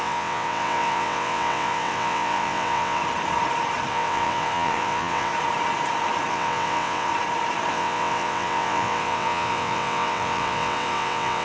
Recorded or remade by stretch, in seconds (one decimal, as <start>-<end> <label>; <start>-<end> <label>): 0.0-3.0 remade; 3.0-3.9 recorded; 3.9-5.3 remade; 5.3-6.3 recorded; 6.3-7.1 remade; 7.1-7.7 recorded; 7.7-11.4 remade